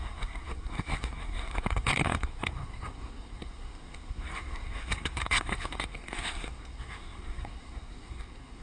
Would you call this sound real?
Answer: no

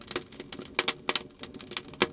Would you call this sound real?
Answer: yes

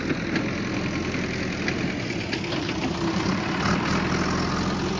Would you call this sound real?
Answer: yes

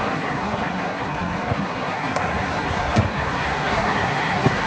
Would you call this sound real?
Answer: no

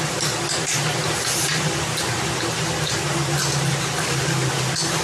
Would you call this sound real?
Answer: yes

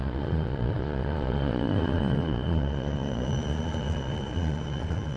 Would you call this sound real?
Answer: no